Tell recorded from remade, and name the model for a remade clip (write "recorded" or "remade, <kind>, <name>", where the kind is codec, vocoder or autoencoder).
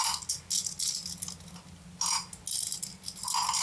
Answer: recorded